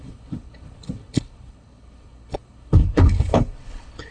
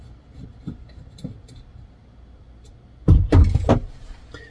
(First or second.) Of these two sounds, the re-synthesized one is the first